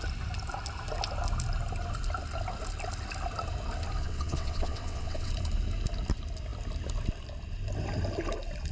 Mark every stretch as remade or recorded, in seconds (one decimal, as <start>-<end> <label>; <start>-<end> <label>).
0.0-4.0 recorded; 4.0-5.3 remade; 5.3-8.7 recorded